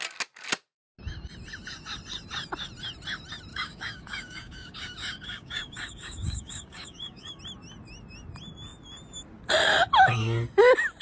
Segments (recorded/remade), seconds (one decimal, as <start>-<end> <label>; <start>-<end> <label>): 0.0-3.5 recorded; 3.5-7.4 remade; 7.4-11.0 recorded